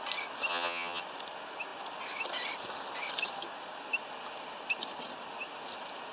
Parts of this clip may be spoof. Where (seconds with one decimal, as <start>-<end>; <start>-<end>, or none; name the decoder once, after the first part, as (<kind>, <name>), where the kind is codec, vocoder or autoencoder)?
0.5-1.0 (vocoder, HiFi-GAN)